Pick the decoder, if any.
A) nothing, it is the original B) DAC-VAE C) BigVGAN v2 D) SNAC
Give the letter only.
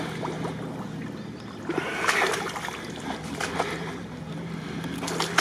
A